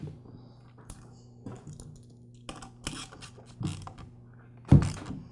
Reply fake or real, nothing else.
real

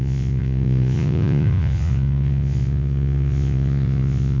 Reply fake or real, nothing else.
fake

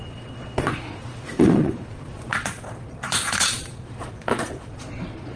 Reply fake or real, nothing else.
fake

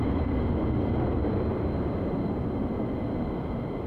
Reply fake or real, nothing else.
real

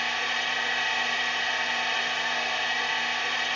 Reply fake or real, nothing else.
real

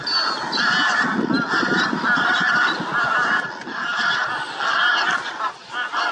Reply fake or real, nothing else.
real